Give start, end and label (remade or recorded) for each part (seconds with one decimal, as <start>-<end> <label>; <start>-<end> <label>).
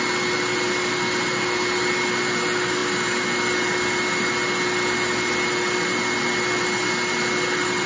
0.0-7.9 recorded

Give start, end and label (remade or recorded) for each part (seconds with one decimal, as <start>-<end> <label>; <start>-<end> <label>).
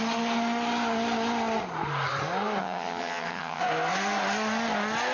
0.0-2.6 recorded; 2.6-3.6 remade; 3.6-5.1 recorded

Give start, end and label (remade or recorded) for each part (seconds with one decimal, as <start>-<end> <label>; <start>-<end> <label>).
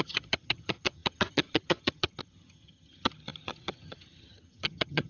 0.0-5.1 remade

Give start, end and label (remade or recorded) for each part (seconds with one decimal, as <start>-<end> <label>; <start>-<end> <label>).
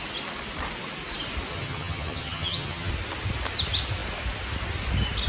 0.0-1.5 recorded; 1.5-2.9 remade; 2.9-5.3 recorded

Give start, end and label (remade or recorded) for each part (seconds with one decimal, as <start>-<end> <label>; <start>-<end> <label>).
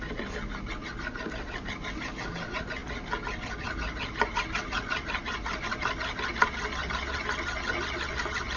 0.0-8.6 recorded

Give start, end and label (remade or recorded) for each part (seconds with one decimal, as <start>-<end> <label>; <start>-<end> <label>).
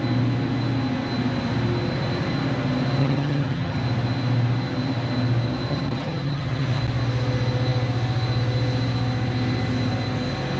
0.0-3.0 recorded; 3.0-3.8 remade; 3.8-5.7 recorded; 5.7-6.8 remade; 6.8-10.6 recorded